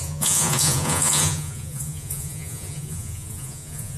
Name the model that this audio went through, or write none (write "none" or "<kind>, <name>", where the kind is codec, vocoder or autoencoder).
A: vocoder, Vocos